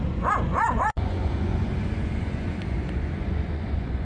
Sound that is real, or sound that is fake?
fake